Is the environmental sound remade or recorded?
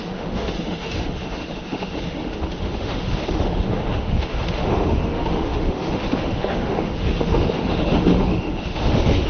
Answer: remade